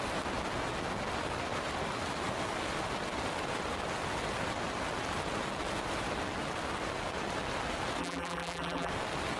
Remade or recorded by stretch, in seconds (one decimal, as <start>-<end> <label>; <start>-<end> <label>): 0.0-8.0 recorded; 8.0-8.9 remade; 8.9-9.4 recorded